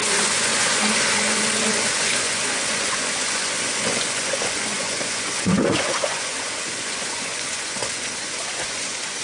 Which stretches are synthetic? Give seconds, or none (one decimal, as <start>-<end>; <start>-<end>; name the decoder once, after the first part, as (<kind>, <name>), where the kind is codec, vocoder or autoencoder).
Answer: 0.0-9.2 (vocoder, Vocos)